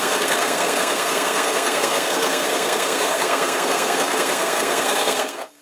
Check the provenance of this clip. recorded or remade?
remade